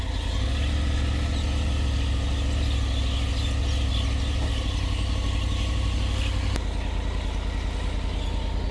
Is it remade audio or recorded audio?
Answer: recorded